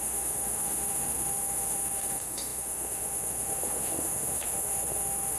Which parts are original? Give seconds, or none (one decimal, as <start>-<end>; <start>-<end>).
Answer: none